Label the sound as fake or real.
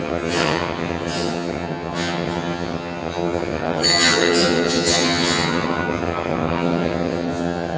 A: fake